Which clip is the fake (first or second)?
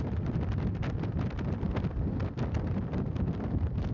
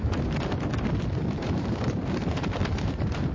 second